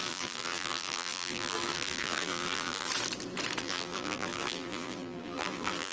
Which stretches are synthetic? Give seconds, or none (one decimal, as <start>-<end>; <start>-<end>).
0.0-2.9; 3.6-5.9